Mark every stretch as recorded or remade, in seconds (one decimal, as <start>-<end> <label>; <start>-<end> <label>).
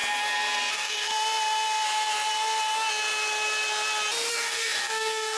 0.0-0.7 recorded; 0.7-1.1 remade; 1.1-4.3 recorded; 4.3-5.4 remade